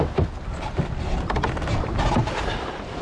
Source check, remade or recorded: recorded